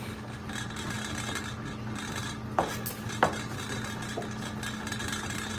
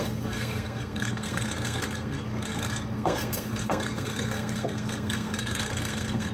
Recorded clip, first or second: first